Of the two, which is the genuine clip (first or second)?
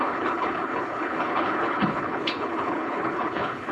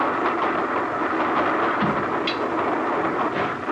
second